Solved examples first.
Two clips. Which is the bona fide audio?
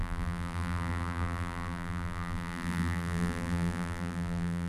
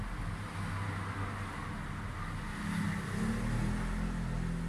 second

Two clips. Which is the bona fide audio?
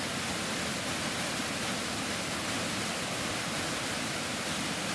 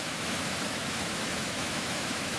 first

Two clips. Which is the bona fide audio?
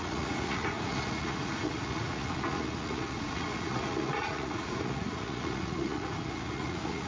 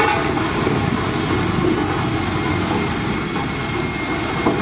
second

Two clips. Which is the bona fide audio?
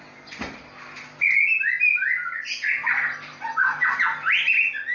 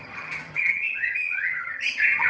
first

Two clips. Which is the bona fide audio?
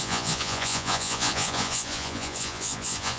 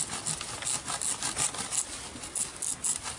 second